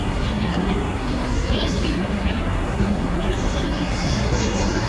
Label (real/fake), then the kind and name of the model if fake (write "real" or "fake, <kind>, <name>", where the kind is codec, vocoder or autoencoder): fake, codec, SNAC